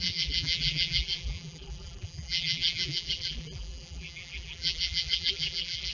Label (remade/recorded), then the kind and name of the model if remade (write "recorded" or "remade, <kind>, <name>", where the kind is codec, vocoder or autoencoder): remade, vocoder, BigVGAN v2